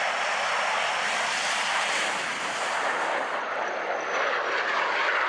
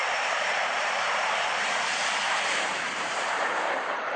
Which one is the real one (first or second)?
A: first